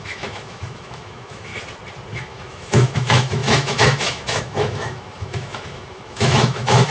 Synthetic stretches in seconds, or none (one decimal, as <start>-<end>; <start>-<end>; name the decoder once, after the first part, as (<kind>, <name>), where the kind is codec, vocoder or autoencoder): 0.0-1.5 (autoencoder, DAC-VAE); 2.1-6.9